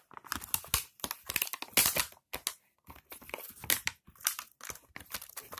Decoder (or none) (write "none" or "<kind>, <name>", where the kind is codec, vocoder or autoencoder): none